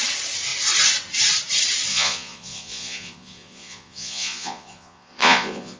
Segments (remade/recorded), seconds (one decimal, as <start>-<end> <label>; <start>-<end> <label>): 0.0-1.9 recorded; 1.9-5.8 remade